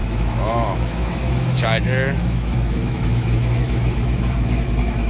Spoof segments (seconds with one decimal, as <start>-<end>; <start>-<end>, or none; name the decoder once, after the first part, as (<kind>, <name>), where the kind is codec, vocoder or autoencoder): 0.0-5.1 (autoencoder, DAC-VAE)